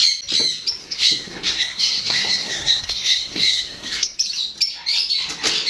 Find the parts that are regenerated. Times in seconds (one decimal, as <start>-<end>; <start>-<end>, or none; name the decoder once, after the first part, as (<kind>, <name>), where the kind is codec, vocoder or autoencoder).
0.8-4.2 (codec, SNAC)